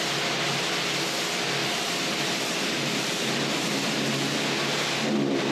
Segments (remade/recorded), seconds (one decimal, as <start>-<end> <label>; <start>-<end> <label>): 0.0-1.6 recorded; 1.6-4.0 remade; 4.0-5.5 recorded